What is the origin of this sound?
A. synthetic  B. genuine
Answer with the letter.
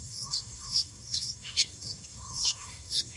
A